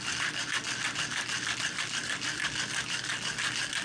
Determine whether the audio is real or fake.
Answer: real